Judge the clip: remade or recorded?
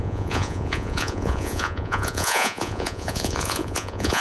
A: remade